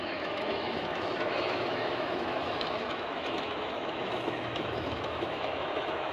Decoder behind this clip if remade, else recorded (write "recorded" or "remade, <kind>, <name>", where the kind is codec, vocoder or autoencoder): remade, autoencoder, DAC-VAE